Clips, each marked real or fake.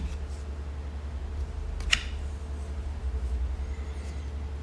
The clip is real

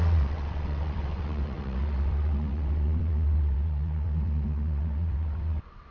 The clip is fake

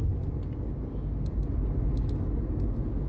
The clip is real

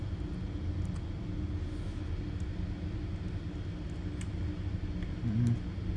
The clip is real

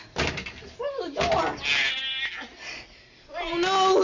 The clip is real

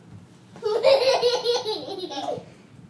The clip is real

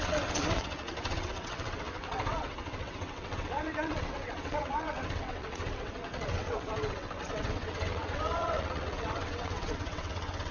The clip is fake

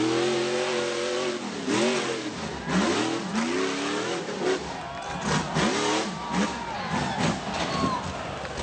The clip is real